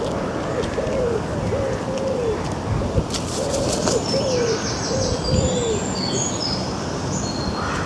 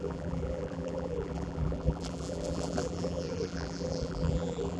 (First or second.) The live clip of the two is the first